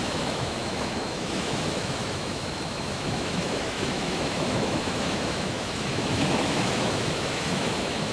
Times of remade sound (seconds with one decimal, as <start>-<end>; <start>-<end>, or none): 0.0-8.1